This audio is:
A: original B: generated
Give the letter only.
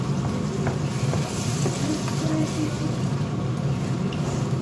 A